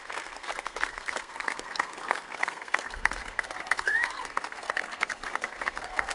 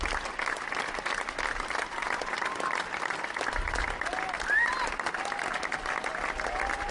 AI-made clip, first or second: first